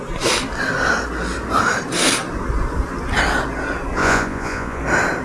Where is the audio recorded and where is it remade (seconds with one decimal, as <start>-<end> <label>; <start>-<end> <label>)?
0.0-4.0 recorded; 4.0-4.8 remade; 4.8-5.2 recorded